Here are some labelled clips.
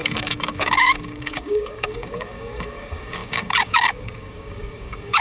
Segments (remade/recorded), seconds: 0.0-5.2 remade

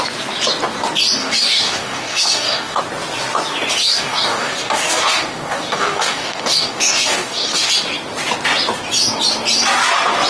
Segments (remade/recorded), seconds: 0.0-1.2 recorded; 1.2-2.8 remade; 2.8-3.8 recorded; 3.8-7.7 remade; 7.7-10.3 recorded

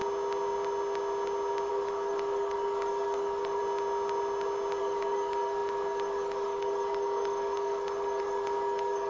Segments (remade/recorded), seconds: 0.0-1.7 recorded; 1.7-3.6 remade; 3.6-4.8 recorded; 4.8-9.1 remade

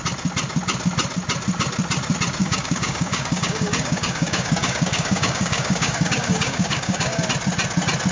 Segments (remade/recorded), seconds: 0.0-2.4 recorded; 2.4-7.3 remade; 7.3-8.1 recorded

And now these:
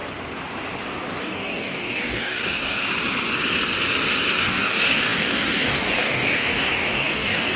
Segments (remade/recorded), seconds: 0.0-1.2 recorded; 1.2-2.9 remade; 2.9-4.4 recorded; 4.4-7.6 remade

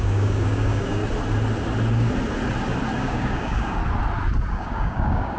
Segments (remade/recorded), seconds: 0.0-1.0 remade; 1.0-3.0 recorded; 3.0-3.8 remade; 3.8-4.5 recorded; 4.5-5.4 remade